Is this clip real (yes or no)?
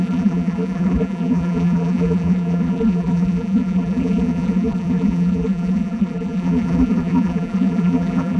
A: no